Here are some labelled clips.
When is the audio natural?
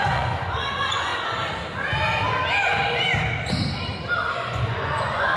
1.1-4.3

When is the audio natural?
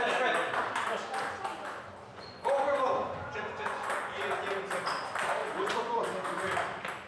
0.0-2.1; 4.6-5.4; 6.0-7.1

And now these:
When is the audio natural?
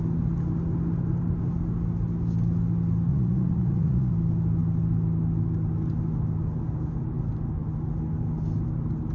0.0-3.1; 4.1-9.1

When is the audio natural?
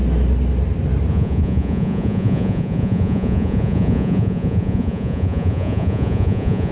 0.0-1.1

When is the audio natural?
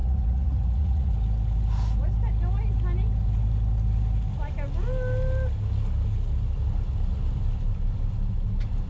1.1-8.9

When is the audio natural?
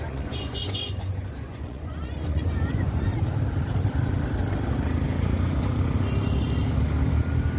3.1-7.6